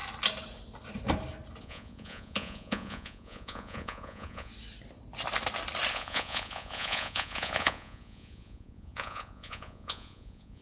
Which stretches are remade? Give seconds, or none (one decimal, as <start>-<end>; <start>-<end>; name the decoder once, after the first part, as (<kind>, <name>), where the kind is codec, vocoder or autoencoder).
1.6-4.5 (vocoder, Vocos); 5.9-10.6